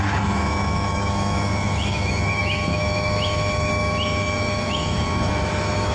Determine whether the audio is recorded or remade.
remade